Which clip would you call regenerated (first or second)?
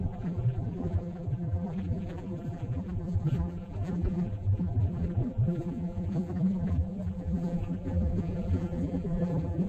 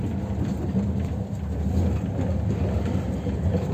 first